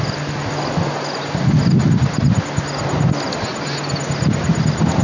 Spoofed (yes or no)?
no